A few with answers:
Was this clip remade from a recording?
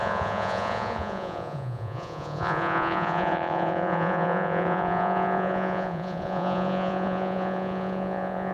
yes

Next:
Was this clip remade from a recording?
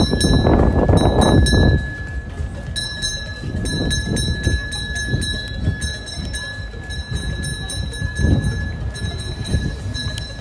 no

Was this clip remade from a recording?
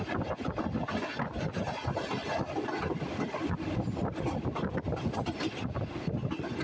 no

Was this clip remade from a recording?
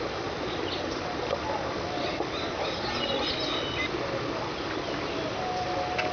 no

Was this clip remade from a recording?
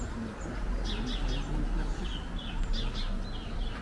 no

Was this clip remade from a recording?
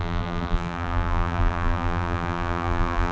yes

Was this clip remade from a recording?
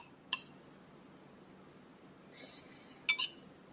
no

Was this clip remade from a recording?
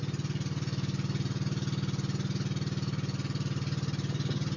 no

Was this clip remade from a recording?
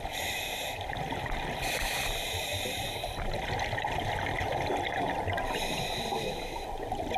no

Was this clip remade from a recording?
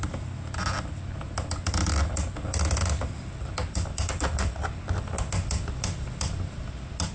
no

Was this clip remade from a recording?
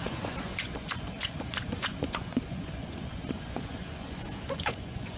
yes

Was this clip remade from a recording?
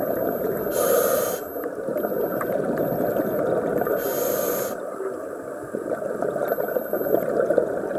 no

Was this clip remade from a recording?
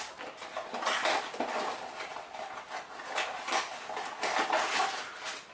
no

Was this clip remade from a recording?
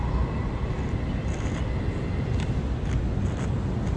no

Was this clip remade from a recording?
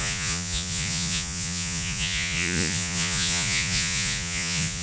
yes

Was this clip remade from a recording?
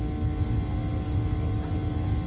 no